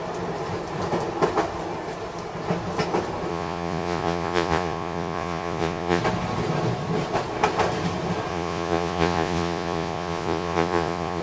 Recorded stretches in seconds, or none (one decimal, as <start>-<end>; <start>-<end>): 0.0-3.3; 6.0-8.3